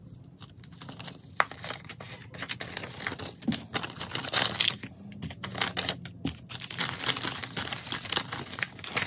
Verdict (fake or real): real